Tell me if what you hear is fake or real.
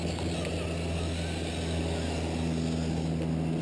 real